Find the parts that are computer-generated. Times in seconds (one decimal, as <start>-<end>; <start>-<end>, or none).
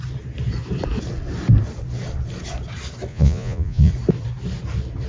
3.1-3.9